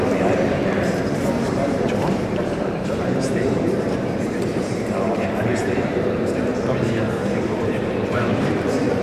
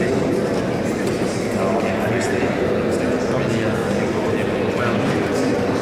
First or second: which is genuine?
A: second